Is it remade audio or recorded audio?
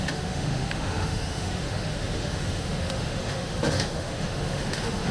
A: remade